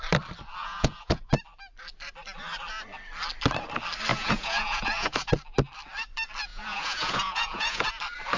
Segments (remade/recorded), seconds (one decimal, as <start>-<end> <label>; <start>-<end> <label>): 0.0-0.6 recorded; 0.6-1.3 remade; 1.3-4.1 recorded; 4.1-5.3 remade; 5.3-6.5 recorded; 6.5-7.9 remade; 7.9-8.4 recorded